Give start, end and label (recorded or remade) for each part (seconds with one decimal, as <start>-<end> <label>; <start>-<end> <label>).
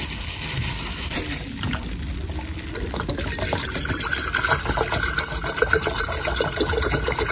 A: 0.0-0.6 recorded; 0.6-1.2 remade; 1.2-5.7 recorded; 5.7-7.3 remade